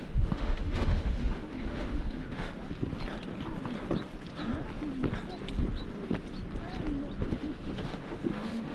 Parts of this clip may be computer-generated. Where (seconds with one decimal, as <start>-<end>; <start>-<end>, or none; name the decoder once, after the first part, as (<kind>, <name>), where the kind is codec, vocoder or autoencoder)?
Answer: 0.0-2.5 (autoencoder, DAC-VAE); 7.2-8.7